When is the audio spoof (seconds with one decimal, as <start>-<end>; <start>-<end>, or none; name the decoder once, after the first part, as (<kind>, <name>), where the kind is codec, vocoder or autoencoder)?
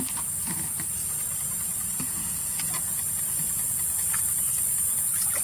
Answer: 1.0-2.0 (vocoder, BigVGAN v2)